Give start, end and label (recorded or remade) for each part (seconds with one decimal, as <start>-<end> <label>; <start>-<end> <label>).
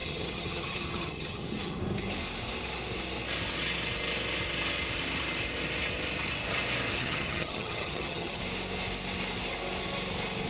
0.0-1.8 remade; 1.8-7.0 recorded; 7.0-8.4 remade; 8.4-10.5 recorded